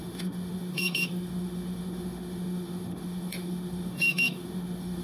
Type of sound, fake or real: fake